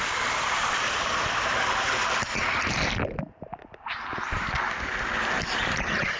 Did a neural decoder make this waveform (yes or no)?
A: yes